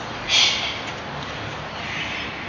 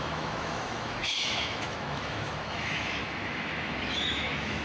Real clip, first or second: first